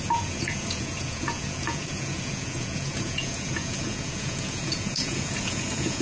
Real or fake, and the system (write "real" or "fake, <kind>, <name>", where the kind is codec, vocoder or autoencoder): fake, vocoder, Vocos